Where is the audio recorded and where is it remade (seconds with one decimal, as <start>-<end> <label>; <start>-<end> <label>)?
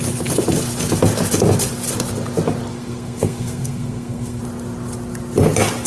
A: 0.0-2.7 recorded; 2.7-4.4 remade; 4.4-5.9 recorded